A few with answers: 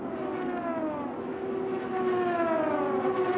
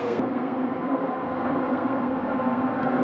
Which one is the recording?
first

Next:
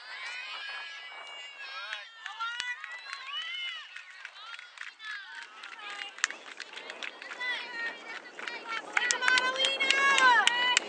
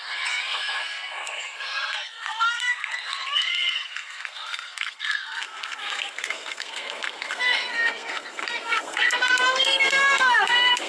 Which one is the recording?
first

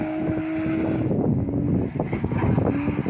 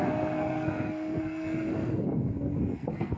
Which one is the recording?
first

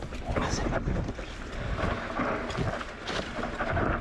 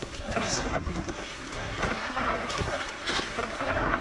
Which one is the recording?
first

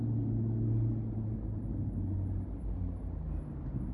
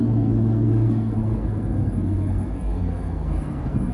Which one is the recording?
first